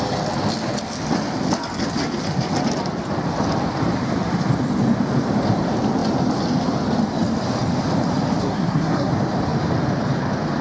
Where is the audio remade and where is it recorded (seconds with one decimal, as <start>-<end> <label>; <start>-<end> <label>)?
0.0-8.4 recorded; 8.4-9.1 remade; 9.1-10.6 recorded